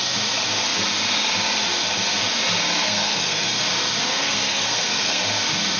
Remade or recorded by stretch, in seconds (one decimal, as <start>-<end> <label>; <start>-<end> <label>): 0.0-2.8 recorded; 2.8-3.6 remade; 3.6-4.0 recorded; 4.0-5.2 remade; 5.2-5.8 recorded